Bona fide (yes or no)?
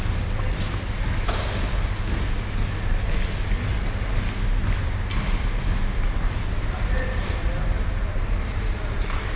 yes